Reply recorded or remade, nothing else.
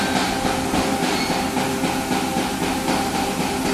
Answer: recorded